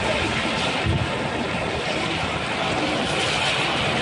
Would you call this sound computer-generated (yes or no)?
no